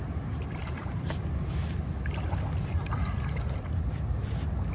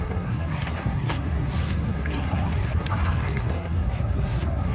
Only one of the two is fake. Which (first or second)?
second